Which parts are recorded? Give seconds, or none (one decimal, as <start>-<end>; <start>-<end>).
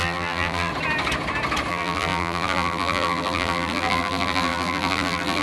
0.7-1.7